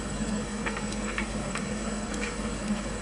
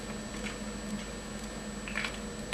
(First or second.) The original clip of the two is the second